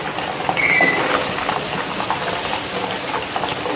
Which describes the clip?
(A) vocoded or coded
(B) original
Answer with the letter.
B